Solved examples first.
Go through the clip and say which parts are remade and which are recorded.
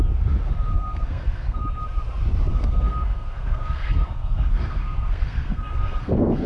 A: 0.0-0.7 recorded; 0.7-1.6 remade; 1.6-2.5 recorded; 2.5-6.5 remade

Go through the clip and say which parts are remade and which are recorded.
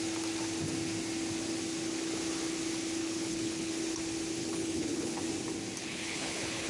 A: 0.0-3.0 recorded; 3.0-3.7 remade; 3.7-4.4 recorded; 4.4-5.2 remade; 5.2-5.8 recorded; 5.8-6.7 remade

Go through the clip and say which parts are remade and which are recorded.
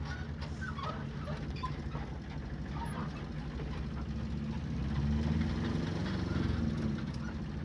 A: 0.0-7.6 recorded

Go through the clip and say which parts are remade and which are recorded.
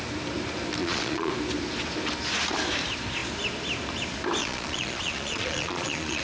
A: 0.0-0.8 recorded; 0.8-1.3 remade; 1.3-4.4 recorded; 4.4-6.2 remade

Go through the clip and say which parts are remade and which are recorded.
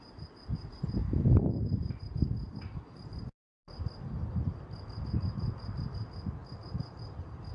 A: 0.0-1.0 recorded; 1.0-5.1 remade; 5.1-6.4 recorded; 6.4-7.5 remade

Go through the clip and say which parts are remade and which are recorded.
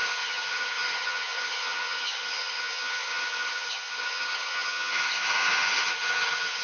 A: 0.0-6.6 remade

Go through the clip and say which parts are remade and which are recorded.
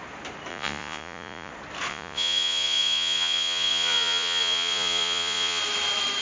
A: 0.0-0.5 recorded; 0.5-1.5 remade; 1.5-1.9 recorded; 1.9-5.6 remade; 5.6-6.2 recorded